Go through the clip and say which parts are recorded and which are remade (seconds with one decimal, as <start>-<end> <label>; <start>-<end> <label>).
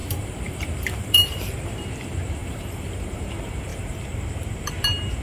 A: 0.0-1.6 remade; 1.6-2.4 recorded; 2.4-3.2 remade; 3.2-3.7 recorded; 3.7-4.7 remade; 4.7-5.2 recorded